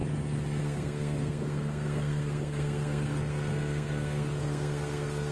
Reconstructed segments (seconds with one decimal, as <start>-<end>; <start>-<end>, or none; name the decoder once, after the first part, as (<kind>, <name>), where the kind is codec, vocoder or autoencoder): 0.6-5.3 (codec, SNAC)

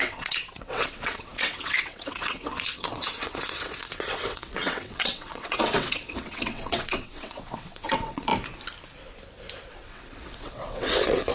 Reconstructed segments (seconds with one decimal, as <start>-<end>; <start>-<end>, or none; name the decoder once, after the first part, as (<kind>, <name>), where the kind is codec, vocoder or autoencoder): 0.0-8.3 (vocoder, WaveNeXt); 9.7-11.3

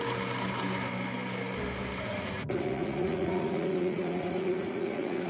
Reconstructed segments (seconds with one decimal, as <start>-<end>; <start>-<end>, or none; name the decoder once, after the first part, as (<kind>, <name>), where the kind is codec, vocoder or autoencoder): 2.1-5.3 (vocoder, Vocos)

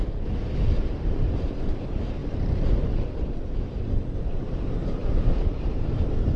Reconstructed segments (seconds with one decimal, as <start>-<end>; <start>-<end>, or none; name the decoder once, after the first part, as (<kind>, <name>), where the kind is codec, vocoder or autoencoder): 0.9-1.5 (vocoder, BigVGAN v2); 2.2-4.5